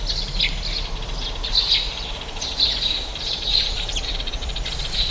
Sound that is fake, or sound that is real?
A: real